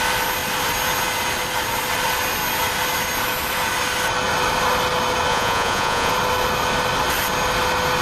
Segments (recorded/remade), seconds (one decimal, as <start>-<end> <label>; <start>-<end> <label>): 0.0-5.3 recorded; 5.3-6.1 remade; 6.1-8.0 recorded